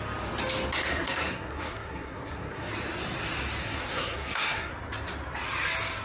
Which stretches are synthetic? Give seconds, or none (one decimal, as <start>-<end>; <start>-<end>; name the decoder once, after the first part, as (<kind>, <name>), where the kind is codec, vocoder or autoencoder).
0.9-2.7 (codec, SNAC); 3.6-4.7